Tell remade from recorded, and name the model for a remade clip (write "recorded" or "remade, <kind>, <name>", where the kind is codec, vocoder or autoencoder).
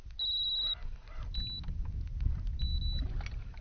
recorded